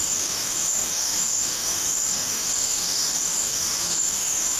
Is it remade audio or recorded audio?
remade